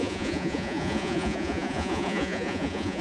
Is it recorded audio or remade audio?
remade